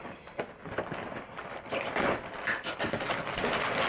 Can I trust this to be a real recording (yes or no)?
yes